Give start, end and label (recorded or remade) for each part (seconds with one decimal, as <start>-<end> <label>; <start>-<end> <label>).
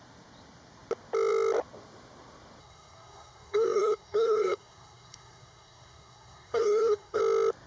0.0-2.6 recorded; 2.6-7.2 remade; 7.2-7.7 recorded